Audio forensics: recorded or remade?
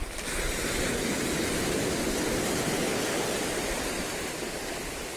recorded